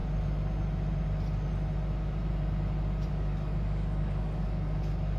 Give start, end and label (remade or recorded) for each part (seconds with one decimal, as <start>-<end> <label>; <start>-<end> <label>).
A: 0.0-3.1 recorded; 3.1-5.2 remade